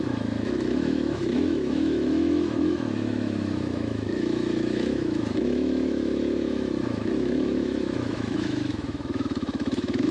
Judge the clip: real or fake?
fake